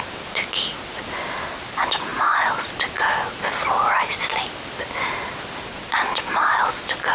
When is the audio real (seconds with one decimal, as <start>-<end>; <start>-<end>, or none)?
0.0-7.1